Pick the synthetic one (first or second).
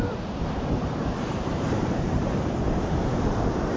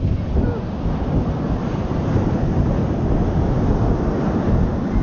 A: first